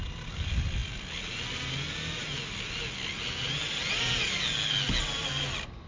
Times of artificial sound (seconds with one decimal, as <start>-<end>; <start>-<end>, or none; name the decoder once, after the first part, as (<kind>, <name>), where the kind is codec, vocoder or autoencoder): none